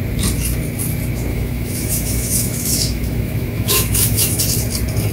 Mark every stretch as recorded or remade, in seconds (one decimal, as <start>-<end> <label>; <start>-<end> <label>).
0.0-1.3 recorded; 1.3-4.4 remade; 4.4-5.1 recorded